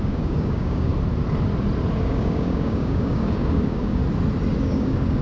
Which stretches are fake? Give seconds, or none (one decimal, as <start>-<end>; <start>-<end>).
0.0-0.9; 2.0-4.0; 4.6-5.2